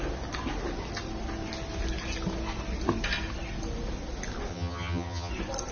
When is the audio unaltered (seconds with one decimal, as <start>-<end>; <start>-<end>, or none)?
0.0-4.5; 5.3-5.7